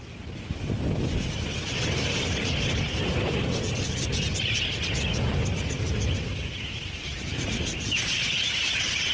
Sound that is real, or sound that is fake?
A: real